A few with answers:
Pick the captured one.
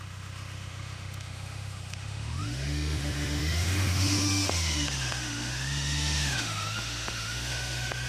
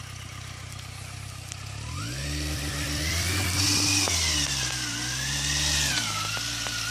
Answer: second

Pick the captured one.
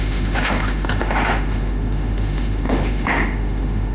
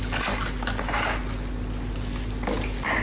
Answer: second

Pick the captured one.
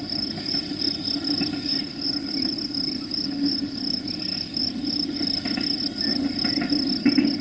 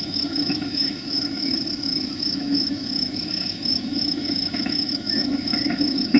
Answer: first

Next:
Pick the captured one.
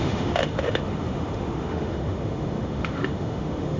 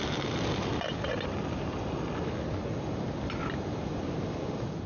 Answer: second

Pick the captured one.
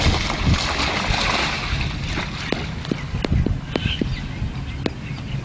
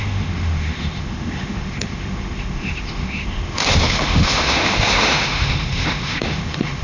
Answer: first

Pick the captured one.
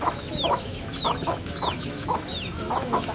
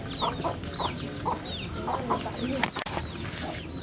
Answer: second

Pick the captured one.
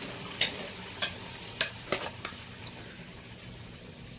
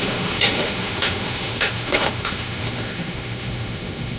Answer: first